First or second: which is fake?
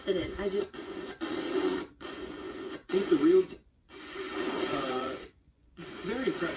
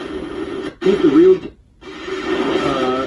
first